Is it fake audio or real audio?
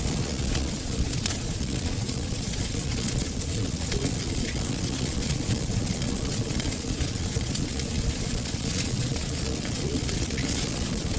fake